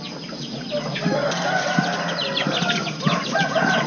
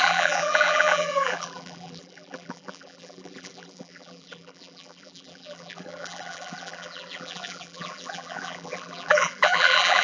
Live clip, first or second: first